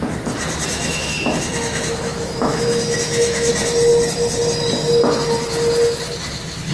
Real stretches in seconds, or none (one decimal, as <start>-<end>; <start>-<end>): 0.0-0.7; 3.5-6.7